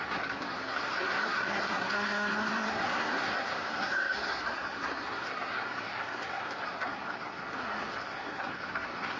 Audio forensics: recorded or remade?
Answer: remade